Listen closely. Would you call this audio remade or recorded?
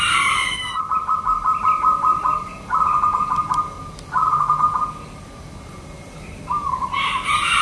recorded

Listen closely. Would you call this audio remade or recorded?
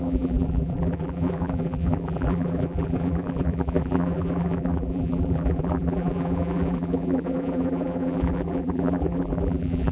remade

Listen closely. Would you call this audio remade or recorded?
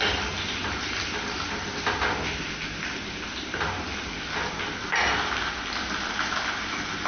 recorded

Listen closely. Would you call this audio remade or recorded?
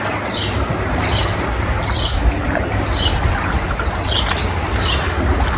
recorded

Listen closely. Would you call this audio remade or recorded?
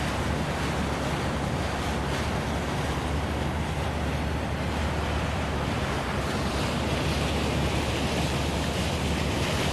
recorded